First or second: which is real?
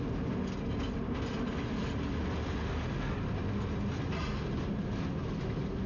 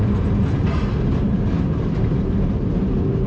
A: first